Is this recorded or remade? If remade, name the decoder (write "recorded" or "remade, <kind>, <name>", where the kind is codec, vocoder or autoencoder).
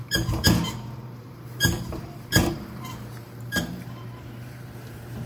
remade, vocoder, BigVGAN v2